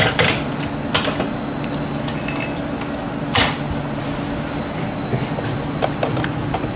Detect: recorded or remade recorded